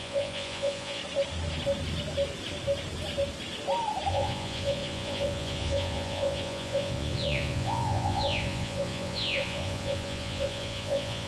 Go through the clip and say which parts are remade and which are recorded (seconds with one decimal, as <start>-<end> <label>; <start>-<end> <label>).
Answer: 0.0-1.0 remade; 1.0-4.1 recorded; 4.1-11.3 remade